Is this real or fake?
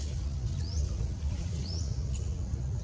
fake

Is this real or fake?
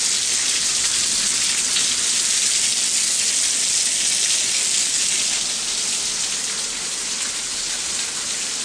real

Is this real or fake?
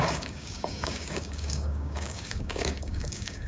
fake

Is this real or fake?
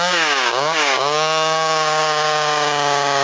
fake